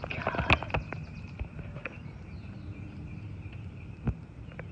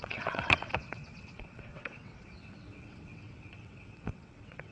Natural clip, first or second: first